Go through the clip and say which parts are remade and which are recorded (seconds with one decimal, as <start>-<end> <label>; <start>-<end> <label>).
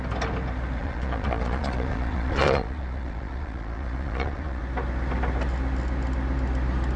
0.0-0.8 recorded; 0.8-4.6 remade; 4.6-7.0 recorded